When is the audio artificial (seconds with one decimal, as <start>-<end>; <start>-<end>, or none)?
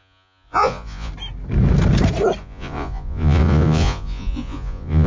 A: 0.0-1.1; 2.4-5.1